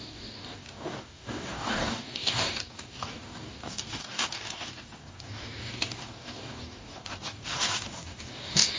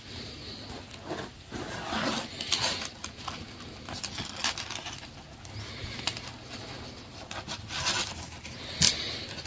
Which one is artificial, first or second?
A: first